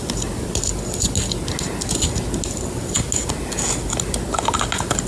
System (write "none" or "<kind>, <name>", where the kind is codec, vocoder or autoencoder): none